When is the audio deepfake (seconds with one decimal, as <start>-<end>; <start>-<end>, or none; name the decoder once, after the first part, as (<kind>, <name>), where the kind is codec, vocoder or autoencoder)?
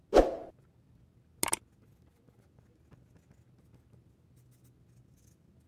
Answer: none